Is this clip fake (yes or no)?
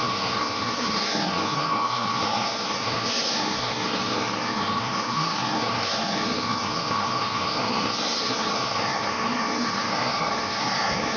yes